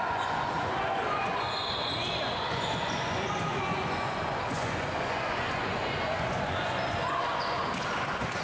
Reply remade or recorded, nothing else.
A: remade